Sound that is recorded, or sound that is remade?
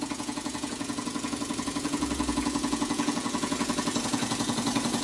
remade